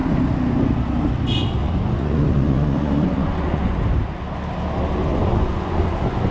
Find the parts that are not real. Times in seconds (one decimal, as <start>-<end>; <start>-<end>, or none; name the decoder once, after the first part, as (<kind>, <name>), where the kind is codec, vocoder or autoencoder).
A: 1.6-3.7 (vocoder, Vocos); 5.1-6.3